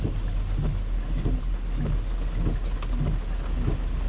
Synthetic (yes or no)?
no